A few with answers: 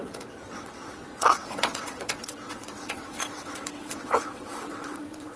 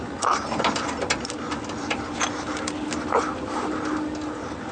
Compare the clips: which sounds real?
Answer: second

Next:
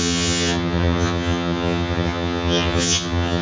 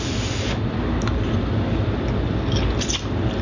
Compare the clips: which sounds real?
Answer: second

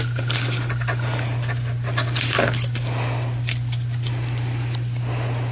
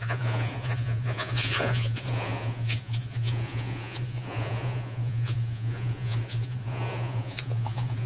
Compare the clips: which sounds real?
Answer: first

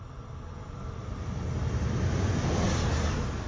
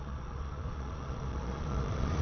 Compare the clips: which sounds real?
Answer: first